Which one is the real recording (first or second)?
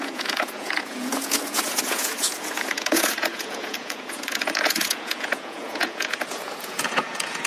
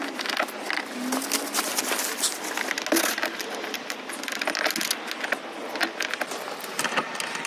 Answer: second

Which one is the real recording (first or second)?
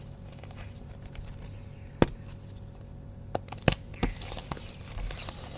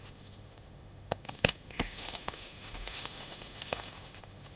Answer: first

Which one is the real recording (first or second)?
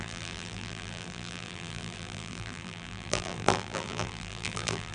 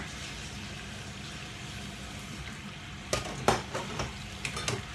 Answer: second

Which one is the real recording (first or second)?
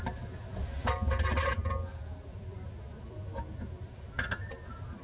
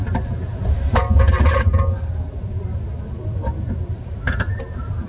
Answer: first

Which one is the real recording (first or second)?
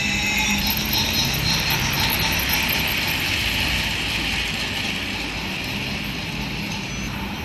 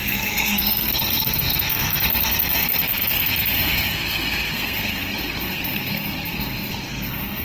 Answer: first